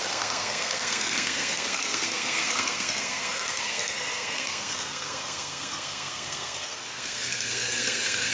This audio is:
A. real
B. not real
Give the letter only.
B